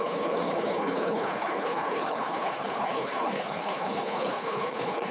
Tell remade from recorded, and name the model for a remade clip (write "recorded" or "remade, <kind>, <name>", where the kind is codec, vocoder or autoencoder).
remade, codec, HILCodec